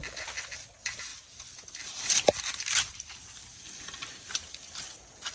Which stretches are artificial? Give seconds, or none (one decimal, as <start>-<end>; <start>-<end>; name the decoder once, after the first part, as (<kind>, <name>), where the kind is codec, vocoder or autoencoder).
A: none